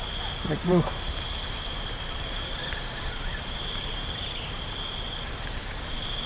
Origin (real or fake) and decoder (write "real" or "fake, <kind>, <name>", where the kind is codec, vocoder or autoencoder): fake, vocoder, BigVGAN v2